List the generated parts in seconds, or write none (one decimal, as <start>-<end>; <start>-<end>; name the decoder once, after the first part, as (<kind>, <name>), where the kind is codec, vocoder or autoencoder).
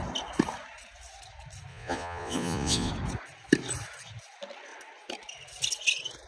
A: 1.7-2.9 (vocoder, Vocos)